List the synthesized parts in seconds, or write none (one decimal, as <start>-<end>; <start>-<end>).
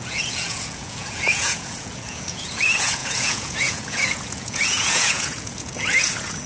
0.0-6.5